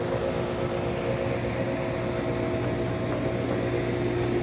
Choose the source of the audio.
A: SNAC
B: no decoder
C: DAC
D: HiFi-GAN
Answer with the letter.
B